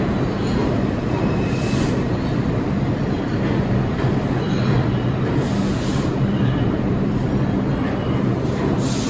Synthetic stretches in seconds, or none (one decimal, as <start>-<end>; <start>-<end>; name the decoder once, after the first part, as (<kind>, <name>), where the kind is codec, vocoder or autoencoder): 0.6-5.3 (vocoder, BigVGAN v2); 5.9-7.4